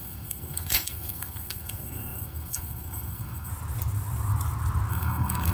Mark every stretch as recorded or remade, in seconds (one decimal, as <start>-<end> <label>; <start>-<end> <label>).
0.0-3.5 remade; 3.5-4.9 recorded; 4.9-5.5 remade